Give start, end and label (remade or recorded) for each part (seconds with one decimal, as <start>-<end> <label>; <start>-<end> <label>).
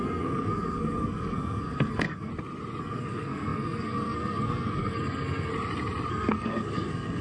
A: 0.0-2.3 remade; 2.3-2.8 recorded; 2.8-5.5 remade; 5.5-6.1 recorded; 6.1-7.2 remade